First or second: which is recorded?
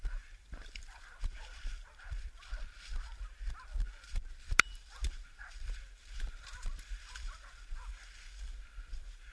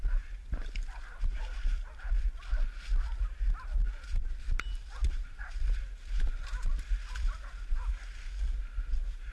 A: second